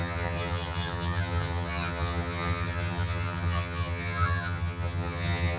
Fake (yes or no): yes